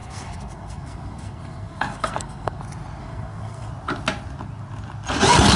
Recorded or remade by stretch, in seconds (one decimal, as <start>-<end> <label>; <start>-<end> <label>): 0.0-2.6 remade; 2.6-3.0 recorded; 3.0-3.7 remade; 3.7-5.6 recorded

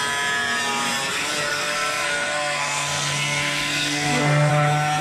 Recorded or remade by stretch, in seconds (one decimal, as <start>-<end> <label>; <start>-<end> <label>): 0.0-1.5 recorded; 1.5-4.5 remade; 4.5-5.0 recorded

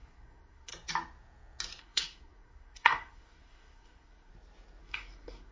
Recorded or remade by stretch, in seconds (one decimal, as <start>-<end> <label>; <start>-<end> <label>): 0.0-0.7 remade; 0.7-1.8 recorded; 1.8-4.3 remade; 4.3-4.8 recorded; 4.8-5.5 remade